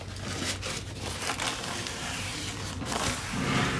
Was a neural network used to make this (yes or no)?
no